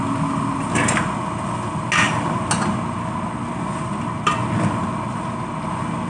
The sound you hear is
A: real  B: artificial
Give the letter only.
A